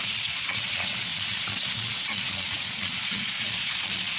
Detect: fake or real fake